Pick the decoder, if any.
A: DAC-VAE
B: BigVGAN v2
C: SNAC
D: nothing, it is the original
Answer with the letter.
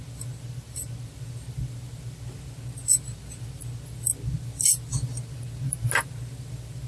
D